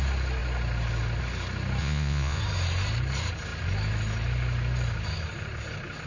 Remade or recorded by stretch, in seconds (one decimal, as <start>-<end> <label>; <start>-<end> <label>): 0.0-1.8 recorded; 1.8-2.4 remade; 2.4-6.1 recorded